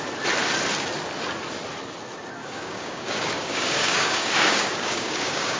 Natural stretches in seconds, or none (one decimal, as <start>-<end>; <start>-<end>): 0.0-2.4